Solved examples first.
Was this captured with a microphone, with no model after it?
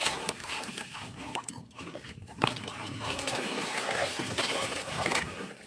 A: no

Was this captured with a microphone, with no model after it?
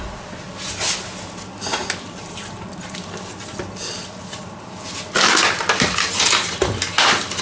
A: yes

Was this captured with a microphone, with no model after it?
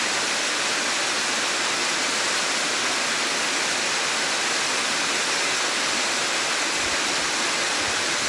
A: yes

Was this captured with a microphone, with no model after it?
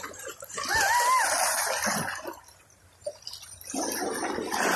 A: yes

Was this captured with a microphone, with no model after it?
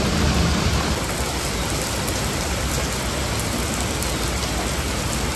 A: yes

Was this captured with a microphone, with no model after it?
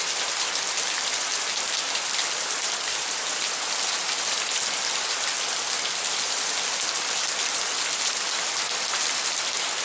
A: yes